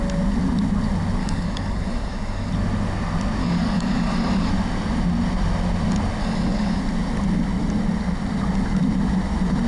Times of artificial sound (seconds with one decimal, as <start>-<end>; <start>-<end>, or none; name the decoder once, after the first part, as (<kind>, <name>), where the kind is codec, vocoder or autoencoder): 1.2-2.5 (codec, DAC); 3.4-4.5; 6.2-6.8